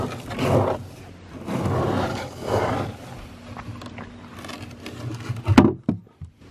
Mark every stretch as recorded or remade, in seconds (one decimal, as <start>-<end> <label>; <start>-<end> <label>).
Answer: 0.0-2.1 recorded; 2.1-2.7 remade; 2.7-6.5 recorded